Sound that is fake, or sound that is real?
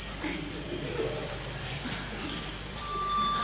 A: fake